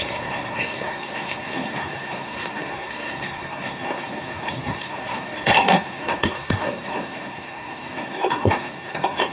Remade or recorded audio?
remade